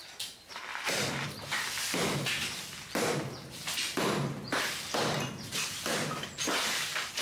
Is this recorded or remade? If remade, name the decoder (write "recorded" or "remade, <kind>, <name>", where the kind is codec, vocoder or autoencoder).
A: recorded